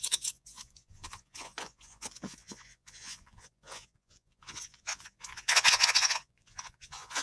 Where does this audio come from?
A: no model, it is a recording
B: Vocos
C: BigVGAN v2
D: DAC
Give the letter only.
B